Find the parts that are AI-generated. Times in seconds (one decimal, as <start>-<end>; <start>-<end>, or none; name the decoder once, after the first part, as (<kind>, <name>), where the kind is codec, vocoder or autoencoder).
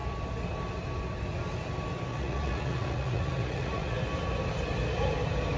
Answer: 2.1-4.0 (vocoder, Vocos)